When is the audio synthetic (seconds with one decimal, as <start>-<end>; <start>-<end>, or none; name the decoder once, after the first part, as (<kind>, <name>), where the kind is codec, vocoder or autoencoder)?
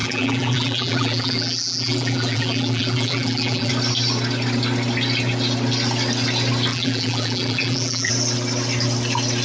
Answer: 0.0-3.7 (vocoder, BigVGAN v2); 6.7-8.1